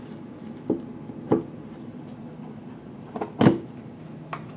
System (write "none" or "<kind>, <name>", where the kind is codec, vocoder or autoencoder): none